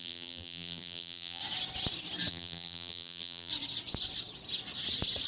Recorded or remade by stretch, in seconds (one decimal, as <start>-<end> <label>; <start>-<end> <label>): 0.0-1.4 remade; 1.4-2.3 recorded; 2.3-3.5 remade; 3.5-5.3 recorded